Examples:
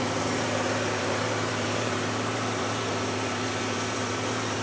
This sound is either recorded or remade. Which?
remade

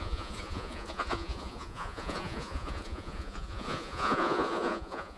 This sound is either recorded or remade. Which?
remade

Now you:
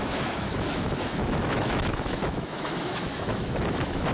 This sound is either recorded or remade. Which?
remade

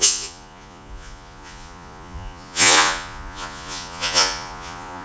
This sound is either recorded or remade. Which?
remade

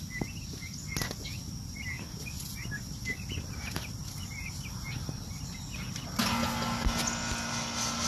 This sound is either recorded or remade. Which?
recorded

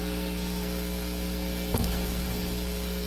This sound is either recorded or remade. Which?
remade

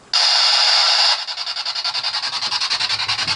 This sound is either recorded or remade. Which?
recorded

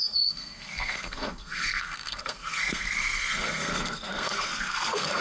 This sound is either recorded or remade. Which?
remade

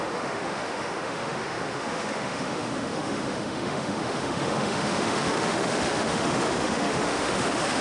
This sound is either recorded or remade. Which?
remade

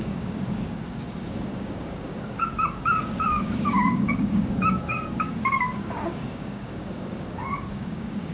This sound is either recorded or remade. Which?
remade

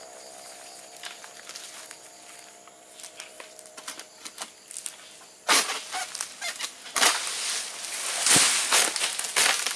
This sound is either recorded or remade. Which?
recorded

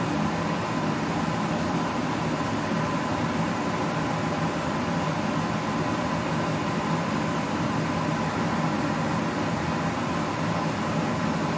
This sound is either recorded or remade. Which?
recorded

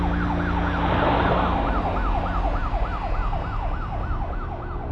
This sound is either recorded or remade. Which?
recorded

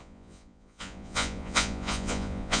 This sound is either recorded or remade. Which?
remade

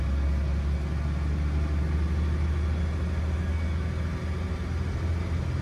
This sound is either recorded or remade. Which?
recorded